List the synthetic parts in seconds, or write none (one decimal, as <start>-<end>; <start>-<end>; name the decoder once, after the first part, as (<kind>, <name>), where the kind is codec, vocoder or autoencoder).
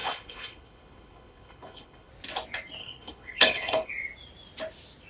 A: 0.0-2.1 (codec, HILCodec); 2.8-3.9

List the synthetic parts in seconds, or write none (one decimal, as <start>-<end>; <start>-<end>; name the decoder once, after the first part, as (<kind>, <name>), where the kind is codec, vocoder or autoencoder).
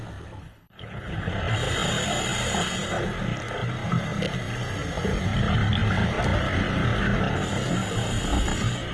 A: 0.4-1.3 (codec, HILCodec)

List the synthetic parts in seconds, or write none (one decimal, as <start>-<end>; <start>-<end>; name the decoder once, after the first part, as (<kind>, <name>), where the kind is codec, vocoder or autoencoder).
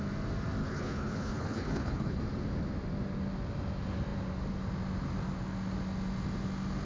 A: 0.6-2.2 (codec, HILCodec)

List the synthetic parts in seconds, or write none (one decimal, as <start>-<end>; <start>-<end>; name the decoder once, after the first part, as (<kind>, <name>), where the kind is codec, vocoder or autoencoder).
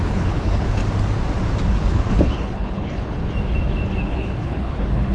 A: 0.0-0.8 (codec, HILCodec); 1.7-3.2; 4.1-5.1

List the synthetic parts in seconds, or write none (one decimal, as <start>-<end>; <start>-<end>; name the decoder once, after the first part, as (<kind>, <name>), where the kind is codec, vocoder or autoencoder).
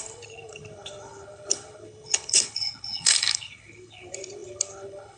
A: 0.0-5.2 (codec, HILCodec)